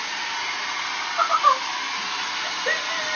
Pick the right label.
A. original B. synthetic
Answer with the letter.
A